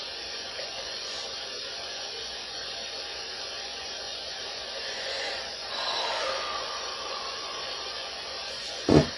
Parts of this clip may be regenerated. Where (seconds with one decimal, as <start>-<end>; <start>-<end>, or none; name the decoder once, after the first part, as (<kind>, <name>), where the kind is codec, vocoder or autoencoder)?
0.0-9.2 (vocoder, Vocos)